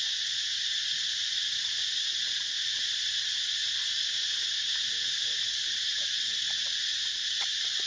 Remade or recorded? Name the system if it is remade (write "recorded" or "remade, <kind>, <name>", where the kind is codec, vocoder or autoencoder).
remade, vocoder, Vocos